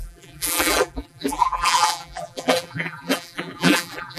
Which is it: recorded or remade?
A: remade